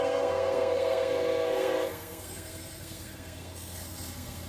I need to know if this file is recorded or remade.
remade